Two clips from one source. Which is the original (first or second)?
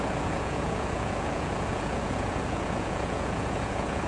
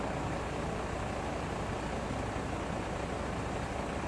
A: second